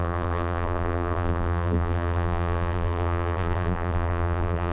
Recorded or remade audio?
remade